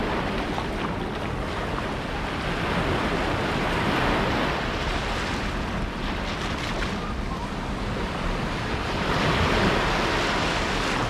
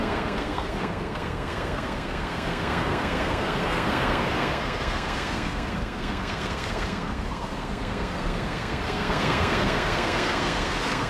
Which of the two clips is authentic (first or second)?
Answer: first